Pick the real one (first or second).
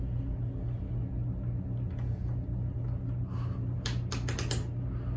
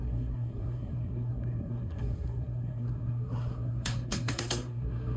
first